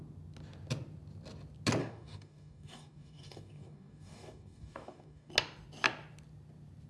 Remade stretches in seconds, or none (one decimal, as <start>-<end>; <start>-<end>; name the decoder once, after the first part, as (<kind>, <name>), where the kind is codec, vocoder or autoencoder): 1.8-5.3 (codec, DAC)